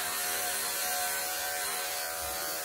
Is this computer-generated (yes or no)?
yes